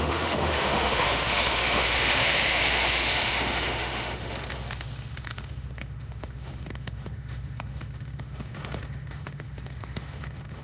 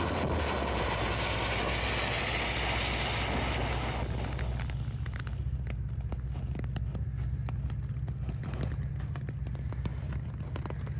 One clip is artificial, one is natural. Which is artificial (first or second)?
first